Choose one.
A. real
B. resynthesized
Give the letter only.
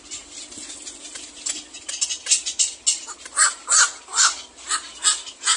A